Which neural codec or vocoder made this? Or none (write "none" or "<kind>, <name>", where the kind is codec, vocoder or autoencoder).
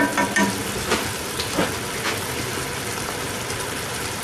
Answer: vocoder, BigVGAN v2